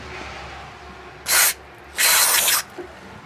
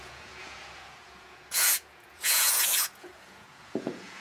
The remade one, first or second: second